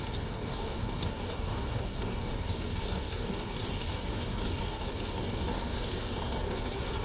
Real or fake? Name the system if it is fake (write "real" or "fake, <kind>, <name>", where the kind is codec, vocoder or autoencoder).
fake, codec, DAC